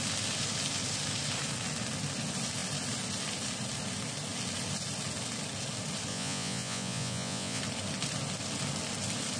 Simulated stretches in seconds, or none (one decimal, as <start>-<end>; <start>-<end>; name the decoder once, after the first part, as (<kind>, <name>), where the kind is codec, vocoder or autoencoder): 6.1-7.6 (vocoder, Vocos)